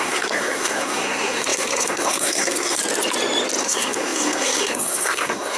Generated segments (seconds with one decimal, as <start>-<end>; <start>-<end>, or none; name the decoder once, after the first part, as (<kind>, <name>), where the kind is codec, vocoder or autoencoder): 0.0-2.8 (codec, SNAC); 3.6-5.6